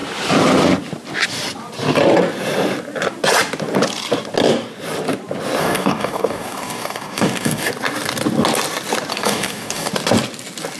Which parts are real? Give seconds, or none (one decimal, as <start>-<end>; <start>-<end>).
0.0-5.6; 7.7-9.1; 9.9-10.8